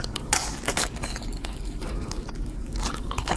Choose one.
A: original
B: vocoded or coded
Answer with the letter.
B